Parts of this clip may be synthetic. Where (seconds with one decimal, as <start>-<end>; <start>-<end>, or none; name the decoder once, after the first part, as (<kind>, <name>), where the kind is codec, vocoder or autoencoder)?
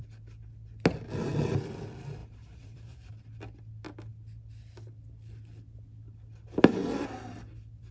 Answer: 2.2-3.1 (vocoder, BigVGAN v2)